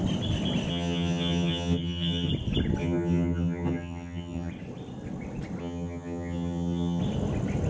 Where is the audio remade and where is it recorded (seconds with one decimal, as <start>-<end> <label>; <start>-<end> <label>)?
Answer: 0.0-0.7 recorded; 0.7-2.3 remade; 2.3-2.8 recorded; 2.8-4.5 remade; 4.5-5.6 recorded; 5.6-7.0 remade; 7.0-7.7 recorded